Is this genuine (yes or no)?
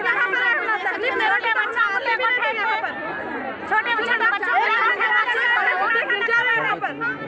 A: yes